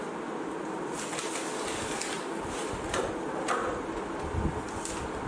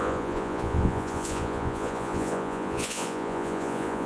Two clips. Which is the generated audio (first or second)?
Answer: second